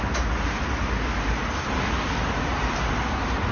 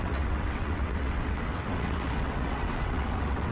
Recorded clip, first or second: first